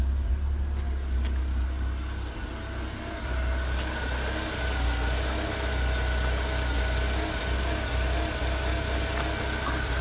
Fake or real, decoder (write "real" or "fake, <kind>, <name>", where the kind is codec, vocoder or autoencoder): real